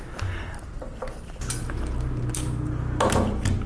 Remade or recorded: recorded